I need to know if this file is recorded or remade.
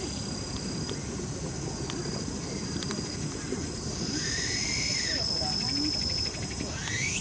recorded